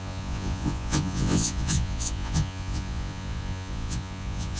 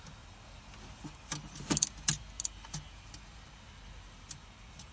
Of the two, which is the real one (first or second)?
second